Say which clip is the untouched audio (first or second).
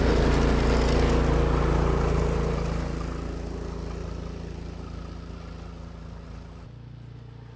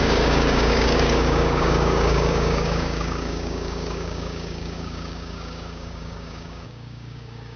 first